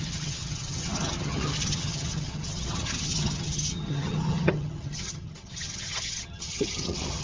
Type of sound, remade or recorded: remade